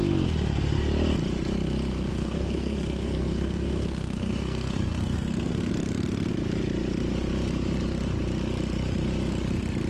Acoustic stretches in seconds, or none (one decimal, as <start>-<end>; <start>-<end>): 0.0-2.1; 5.7-9.9